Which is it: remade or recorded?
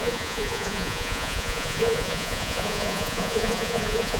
remade